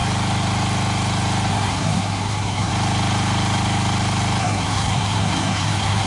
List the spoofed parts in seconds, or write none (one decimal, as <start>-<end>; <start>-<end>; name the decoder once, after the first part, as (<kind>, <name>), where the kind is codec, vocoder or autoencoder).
1.5-2.7 (codec, SNAC); 4.4-6.1